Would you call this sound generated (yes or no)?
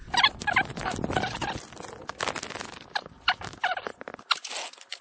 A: no